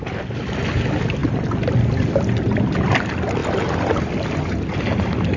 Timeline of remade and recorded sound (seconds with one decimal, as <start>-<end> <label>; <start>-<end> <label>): 0.0-5.4 recorded